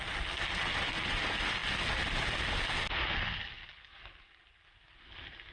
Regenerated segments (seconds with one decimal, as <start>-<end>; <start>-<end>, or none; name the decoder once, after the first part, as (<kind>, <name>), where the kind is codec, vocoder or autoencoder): none